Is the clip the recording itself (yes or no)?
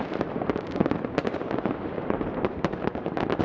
no